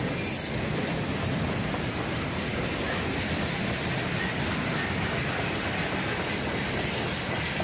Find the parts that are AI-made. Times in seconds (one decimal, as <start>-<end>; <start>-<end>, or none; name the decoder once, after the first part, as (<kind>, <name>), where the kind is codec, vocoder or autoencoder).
none